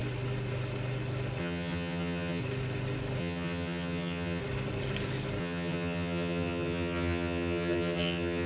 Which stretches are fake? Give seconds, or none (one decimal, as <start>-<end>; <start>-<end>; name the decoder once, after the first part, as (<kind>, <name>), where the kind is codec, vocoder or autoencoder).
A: 1.4-2.4 (vocoder, HiFi-GAN); 3.2-4.4; 5.4-8.5